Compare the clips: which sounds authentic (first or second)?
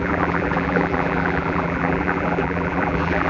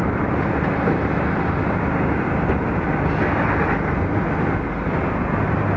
second